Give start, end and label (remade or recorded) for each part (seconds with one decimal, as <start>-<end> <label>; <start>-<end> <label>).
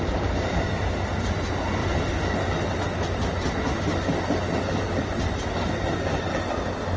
0.0-7.0 recorded